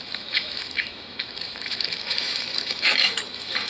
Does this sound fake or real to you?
fake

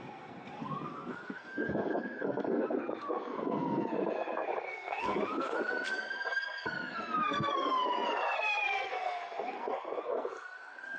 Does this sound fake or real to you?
fake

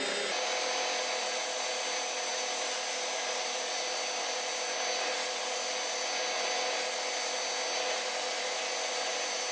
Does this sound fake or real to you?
real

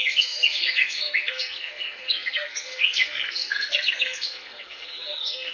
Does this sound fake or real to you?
fake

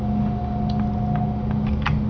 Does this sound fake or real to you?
real